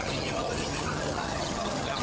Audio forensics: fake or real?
fake